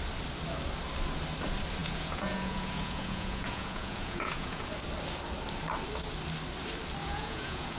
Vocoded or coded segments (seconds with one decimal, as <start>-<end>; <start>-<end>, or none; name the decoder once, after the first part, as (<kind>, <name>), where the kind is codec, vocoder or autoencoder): 1.8-4.7 (vocoder, Vocos); 7.0-7.8